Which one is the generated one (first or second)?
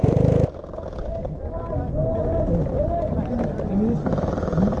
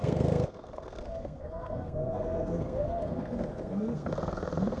second